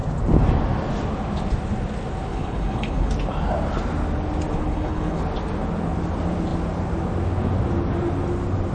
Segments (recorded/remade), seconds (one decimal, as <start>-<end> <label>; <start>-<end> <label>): 0.0-2.3 recorded; 2.3-3.1 remade; 3.1-4.7 recorded; 4.7-5.2 remade; 5.2-8.7 recorded